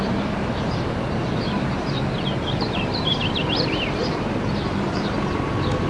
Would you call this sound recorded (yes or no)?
no